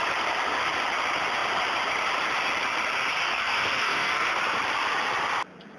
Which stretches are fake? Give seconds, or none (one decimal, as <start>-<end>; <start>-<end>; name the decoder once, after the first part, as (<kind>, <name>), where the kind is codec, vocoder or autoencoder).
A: 3.2-4.4 (codec, SNAC)